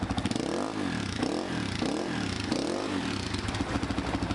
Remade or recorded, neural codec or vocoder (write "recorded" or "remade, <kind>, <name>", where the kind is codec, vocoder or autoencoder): recorded